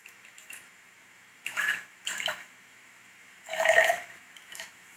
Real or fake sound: fake